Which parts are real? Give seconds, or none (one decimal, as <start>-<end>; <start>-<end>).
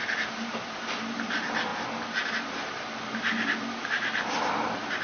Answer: 0.0-5.0